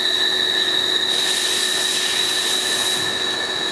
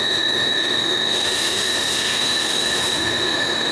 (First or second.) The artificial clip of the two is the second